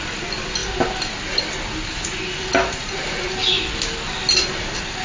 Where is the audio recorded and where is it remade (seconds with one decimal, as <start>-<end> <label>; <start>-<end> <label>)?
0.0-5.0 recorded